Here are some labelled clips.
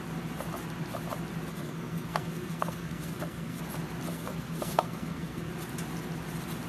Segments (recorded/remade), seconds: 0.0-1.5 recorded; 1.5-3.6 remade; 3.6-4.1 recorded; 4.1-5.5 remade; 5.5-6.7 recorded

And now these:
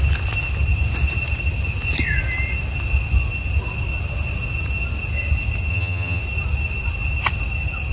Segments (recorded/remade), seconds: 0.0-5.7 recorded; 5.7-6.2 remade; 6.2-7.9 recorded

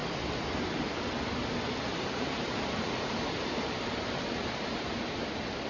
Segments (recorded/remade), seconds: 0.0-1.9 recorded; 1.9-5.3 remade; 5.3-5.7 recorded

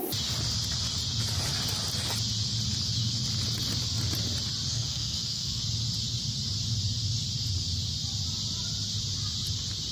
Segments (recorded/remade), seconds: 0.0-4.7 recorded; 4.7-5.6 remade; 5.6-9.9 recorded

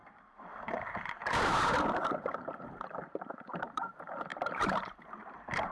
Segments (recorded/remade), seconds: 0.0-5.7 remade

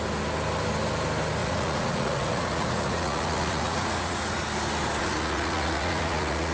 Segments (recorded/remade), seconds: 0.0-1.4 recorded; 1.4-4.4 remade; 4.4-5.0 recorded; 5.0-6.5 remade